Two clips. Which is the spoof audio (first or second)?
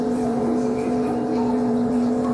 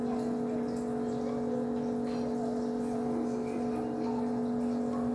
first